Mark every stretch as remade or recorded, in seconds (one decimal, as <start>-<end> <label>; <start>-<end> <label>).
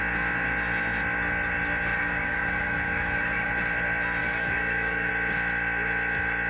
0.0-1.9 recorded; 1.9-3.5 remade; 3.5-4.2 recorded; 4.2-5.1 remade; 5.1-6.5 recorded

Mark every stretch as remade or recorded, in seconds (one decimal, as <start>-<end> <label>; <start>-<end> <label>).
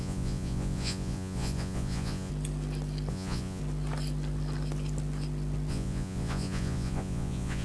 0.0-2.3 remade; 2.3-3.1 recorded; 3.1-3.6 remade; 3.6-5.7 recorded; 5.7-7.6 remade